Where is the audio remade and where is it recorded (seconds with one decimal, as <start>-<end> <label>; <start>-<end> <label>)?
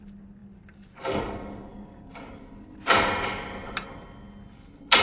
0.0-1.7 recorded; 1.7-2.4 remade; 2.4-5.0 recorded